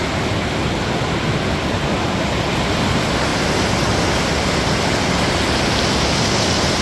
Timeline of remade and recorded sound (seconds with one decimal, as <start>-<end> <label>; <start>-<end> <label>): 0.0-6.8 recorded

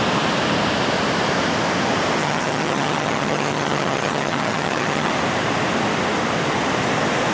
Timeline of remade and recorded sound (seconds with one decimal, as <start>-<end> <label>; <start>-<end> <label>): 0.0-2.2 recorded; 2.2-5.1 remade; 5.1-7.3 recorded

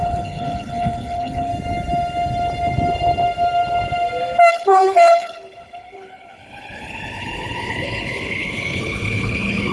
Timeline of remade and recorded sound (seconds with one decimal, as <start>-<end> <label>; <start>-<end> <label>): 0.0-1.5 remade; 1.5-4.5 recorded; 4.5-9.7 remade

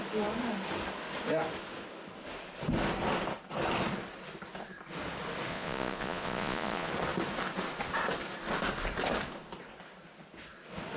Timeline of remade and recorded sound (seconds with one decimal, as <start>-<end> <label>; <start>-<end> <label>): 0.0-5.5 recorded; 5.5-6.9 remade; 6.9-11.0 recorded

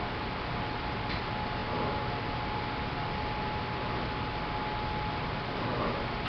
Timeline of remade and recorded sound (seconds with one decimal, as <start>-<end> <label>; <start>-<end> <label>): 0.0-6.3 recorded